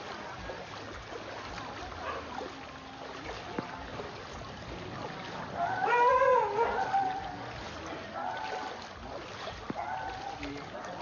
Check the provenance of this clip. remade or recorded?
recorded